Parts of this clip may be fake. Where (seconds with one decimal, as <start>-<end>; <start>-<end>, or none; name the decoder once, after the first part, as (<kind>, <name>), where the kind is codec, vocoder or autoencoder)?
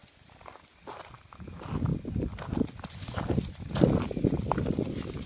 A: none